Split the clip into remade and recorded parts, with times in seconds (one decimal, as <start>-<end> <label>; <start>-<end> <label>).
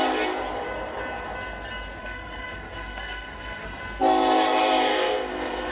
0.0-2.0 recorded; 2.0-3.8 remade; 3.8-4.9 recorded; 4.9-5.7 remade